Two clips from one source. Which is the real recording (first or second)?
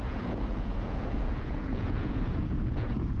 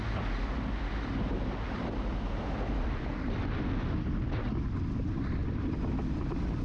second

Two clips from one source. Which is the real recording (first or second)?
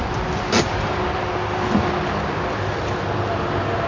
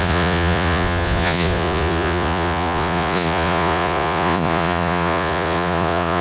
first